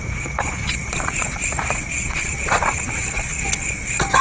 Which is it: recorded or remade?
remade